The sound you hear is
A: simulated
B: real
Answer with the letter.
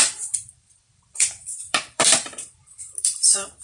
A